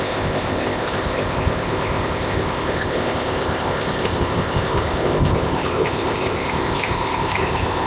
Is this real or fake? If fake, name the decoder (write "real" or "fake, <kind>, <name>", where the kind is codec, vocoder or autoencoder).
fake, codec, ZipCodec